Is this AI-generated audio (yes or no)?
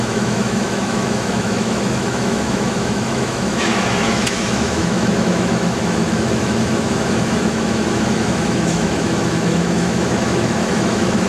yes